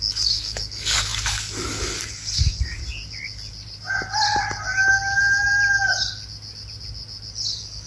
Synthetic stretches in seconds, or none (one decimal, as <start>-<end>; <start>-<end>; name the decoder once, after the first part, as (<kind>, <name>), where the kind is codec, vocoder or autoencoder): 0.0-2.8 (codec, DAC); 7.5-7.9